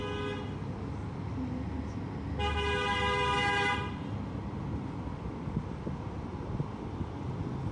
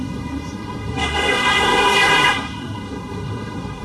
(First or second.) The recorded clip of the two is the first